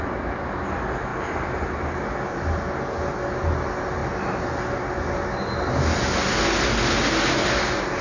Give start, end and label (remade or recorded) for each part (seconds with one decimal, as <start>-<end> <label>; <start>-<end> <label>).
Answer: 0.0-8.0 recorded